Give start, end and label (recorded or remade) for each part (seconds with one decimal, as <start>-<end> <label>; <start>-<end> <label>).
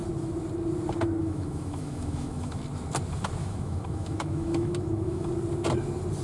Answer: 0.0-1.2 recorded; 1.2-2.6 remade; 2.6-3.4 recorded; 3.4-5.3 remade; 5.3-6.2 recorded